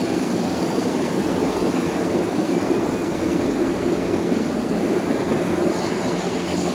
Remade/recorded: remade